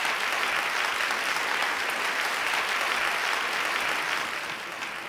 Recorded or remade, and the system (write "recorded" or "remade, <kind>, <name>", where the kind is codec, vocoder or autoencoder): recorded